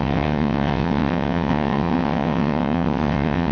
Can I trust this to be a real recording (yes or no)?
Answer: no